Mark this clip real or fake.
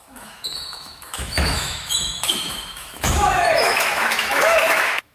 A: fake